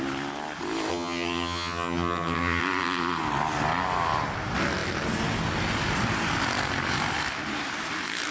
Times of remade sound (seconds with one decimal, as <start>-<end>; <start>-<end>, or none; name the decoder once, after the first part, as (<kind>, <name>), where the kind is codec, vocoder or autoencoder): 0.9-2.6 (vocoder, HiFi-GAN)